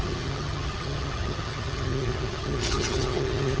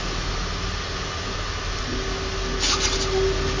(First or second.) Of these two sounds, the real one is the second